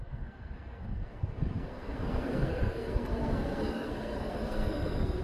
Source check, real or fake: fake